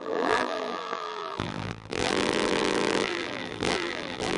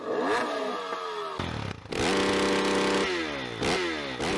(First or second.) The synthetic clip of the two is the first